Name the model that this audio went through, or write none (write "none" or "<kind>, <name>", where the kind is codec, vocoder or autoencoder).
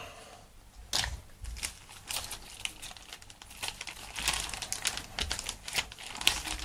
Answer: none